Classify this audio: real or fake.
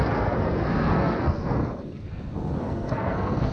fake